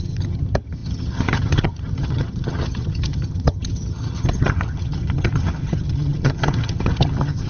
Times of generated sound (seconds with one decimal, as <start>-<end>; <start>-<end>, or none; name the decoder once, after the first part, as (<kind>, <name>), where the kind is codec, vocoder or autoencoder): 0.0-7.5 (vocoder, HiFi-GAN)